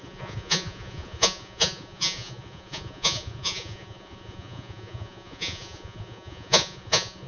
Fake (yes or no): yes